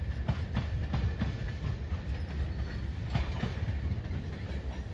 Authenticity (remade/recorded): recorded